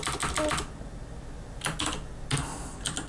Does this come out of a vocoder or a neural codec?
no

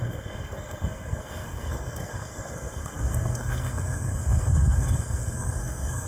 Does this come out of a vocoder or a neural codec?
yes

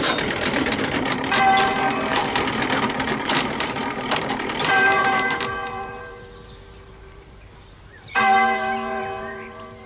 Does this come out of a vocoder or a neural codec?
yes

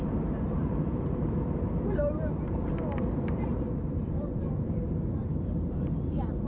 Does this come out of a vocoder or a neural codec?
yes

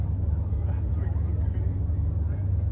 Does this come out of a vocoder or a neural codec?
no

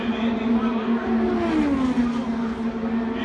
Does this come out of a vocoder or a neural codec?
no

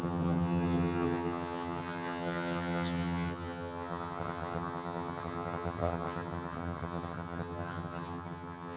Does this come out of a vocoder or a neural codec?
yes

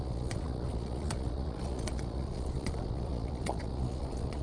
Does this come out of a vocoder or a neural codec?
yes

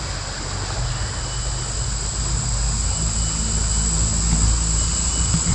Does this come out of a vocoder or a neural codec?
no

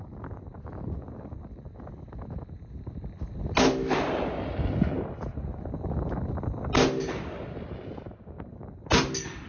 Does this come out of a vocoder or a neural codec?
no